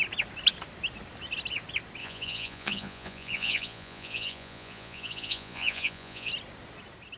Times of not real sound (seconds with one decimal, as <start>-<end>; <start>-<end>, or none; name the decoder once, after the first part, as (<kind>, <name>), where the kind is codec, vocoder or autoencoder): 2.0-6.3 (vocoder, Vocos)